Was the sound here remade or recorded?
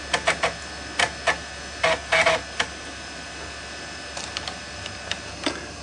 recorded